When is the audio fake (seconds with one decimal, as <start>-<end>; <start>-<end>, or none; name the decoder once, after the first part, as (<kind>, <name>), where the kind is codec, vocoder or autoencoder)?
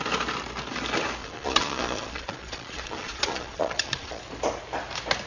1.2-4.2 (vocoder, Vocos)